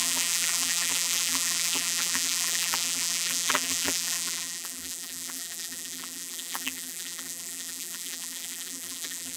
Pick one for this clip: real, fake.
fake